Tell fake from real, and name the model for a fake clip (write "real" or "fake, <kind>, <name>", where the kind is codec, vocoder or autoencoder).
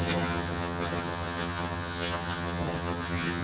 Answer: fake, vocoder, HiFi-GAN